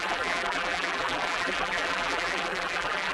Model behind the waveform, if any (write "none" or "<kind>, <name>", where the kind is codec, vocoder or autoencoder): vocoder, BigVGAN v2